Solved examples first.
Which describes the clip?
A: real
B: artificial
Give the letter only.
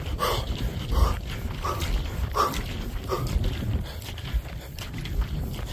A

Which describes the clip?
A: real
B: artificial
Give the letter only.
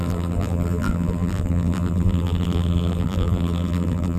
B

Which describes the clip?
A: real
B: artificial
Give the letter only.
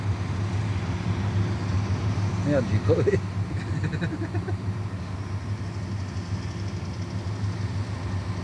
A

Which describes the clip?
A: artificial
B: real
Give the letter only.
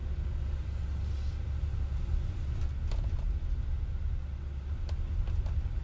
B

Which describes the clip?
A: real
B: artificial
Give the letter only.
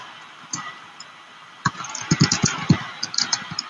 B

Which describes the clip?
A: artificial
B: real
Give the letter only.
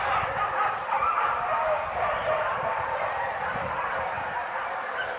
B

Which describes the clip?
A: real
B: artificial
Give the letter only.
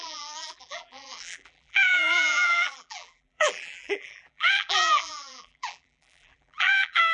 B